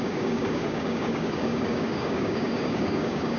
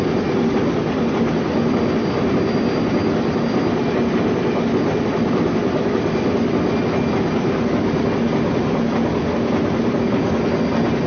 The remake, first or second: first